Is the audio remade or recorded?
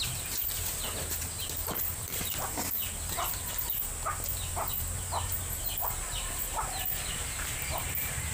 remade